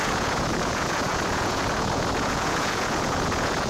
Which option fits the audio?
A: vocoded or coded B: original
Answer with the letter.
A